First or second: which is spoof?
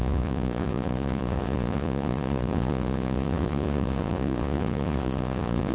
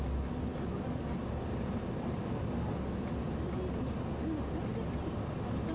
first